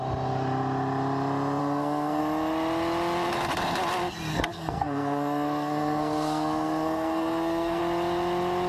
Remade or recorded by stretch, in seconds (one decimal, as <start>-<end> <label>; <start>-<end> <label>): 0.0-1.6 recorded; 1.6-2.2 remade; 2.2-4.3 recorded; 4.3-7.8 remade; 7.8-8.7 recorded